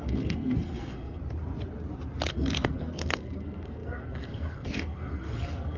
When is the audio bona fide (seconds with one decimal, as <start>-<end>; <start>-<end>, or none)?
1.2-2.3